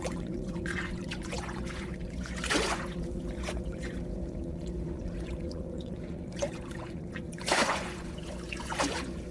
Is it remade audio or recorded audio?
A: remade